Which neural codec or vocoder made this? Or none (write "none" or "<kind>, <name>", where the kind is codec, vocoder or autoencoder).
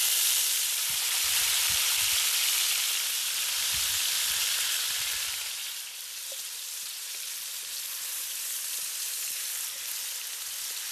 vocoder, BigVGAN v2